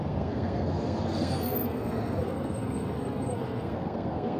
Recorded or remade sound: remade